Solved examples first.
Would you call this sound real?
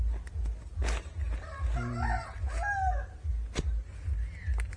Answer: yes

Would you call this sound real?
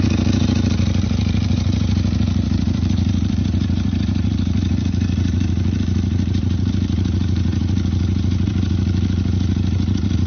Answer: no